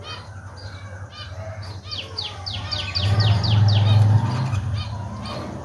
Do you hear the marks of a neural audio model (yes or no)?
no